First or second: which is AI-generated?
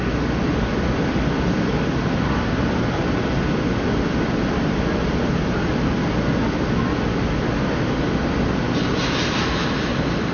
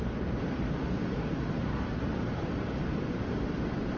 second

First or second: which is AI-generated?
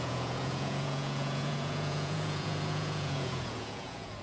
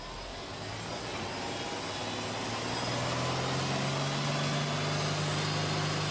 first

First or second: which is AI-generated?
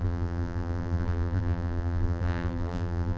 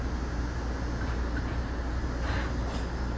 first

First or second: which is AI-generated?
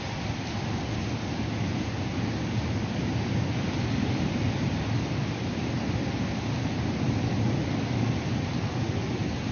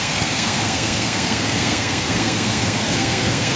second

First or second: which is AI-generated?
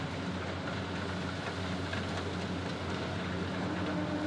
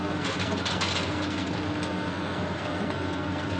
second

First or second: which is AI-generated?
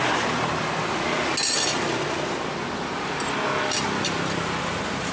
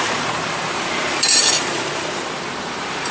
second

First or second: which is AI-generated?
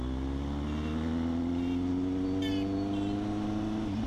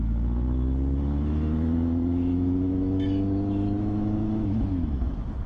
second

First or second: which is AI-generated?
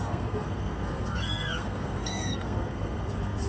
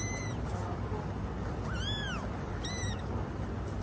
first